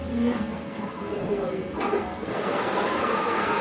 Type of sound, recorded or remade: remade